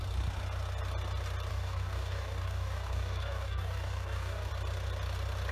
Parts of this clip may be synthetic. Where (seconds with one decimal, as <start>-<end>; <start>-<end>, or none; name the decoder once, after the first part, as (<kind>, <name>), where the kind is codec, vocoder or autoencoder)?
1.5-4.5 (codec, DAC)